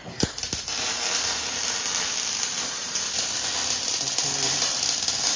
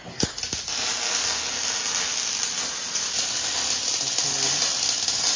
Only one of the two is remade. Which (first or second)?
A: first